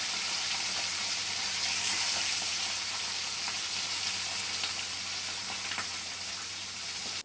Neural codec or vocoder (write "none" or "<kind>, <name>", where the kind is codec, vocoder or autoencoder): vocoder, BigVGAN v2